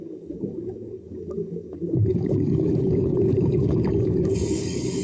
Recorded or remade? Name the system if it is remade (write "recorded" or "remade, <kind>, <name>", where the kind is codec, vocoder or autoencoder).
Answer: remade, codec, DAC